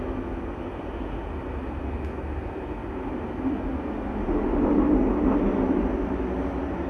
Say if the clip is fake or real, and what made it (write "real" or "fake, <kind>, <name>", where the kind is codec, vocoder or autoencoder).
real